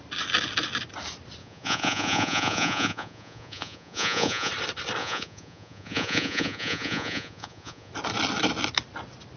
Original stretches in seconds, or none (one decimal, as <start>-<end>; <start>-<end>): 0.0-1.4; 4.5-5.0; 7.9-9.4